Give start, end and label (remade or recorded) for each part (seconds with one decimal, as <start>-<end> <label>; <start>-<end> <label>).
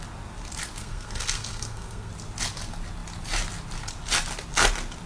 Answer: 0.0-0.8 recorded; 0.8-2.1 remade; 2.1-5.1 recorded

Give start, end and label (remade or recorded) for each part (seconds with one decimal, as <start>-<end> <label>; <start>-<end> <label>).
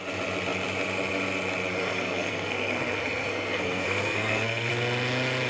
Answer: 0.0-1.7 recorded; 1.7-4.7 remade; 4.7-5.5 recorded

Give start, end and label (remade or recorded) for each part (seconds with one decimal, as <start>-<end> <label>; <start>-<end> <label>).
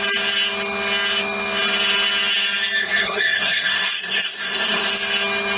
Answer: 0.0-2.8 recorded; 2.8-4.9 remade; 4.9-5.6 recorded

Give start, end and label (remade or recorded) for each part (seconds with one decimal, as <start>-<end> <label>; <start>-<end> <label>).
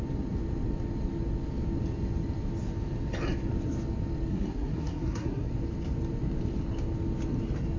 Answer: 0.0-4.3 recorded; 4.3-5.5 remade; 5.5-7.8 recorded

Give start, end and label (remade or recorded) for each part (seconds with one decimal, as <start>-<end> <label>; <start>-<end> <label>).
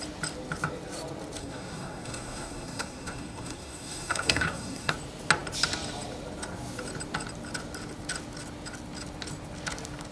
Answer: 0.0-1.4 recorded; 1.4-4.9 remade; 4.9-10.1 recorded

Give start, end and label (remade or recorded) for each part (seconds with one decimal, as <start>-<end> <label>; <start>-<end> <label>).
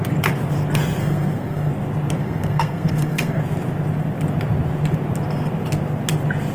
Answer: 0.0-1.0 recorded; 1.0-1.7 remade; 1.7-2.2 recorded; 2.2-3.4 remade; 3.4-6.5 recorded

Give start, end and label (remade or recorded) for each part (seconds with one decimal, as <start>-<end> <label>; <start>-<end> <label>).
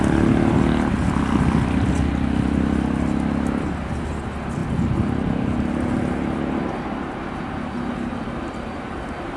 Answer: 0.0-9.4 recorded